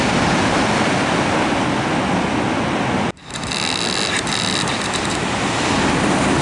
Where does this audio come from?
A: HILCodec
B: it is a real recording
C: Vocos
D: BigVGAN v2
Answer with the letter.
B